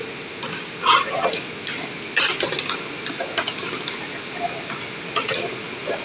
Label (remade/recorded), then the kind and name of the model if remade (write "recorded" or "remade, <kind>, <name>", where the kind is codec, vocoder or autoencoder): recorded